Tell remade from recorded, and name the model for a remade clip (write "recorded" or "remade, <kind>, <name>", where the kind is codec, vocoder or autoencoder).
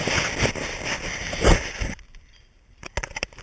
recorded